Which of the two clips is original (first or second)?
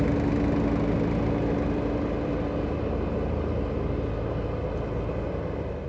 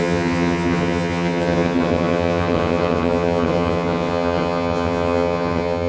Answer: first